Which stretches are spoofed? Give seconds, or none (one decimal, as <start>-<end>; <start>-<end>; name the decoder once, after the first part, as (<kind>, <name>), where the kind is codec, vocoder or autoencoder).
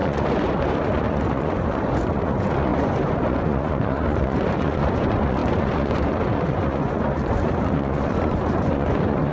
0.0-9.3 (vocoder, Vocos)